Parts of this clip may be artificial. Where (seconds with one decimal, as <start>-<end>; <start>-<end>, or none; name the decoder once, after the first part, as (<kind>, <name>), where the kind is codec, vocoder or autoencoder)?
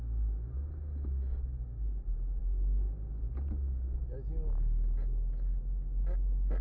none